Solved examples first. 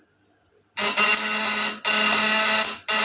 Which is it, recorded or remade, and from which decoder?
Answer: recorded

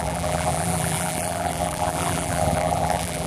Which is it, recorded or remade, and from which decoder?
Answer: remade, vocoder, BigVGAN v2